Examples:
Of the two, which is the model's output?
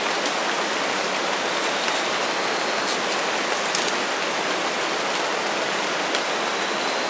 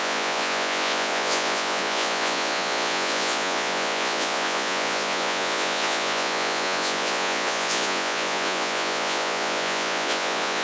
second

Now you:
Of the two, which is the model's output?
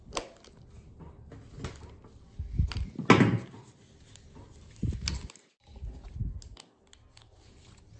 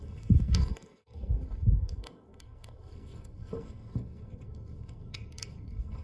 second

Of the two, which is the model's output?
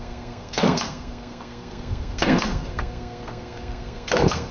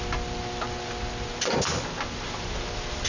first